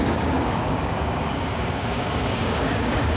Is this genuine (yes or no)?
no